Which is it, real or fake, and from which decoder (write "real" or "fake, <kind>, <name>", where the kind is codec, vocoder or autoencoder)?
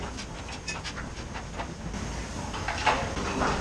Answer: real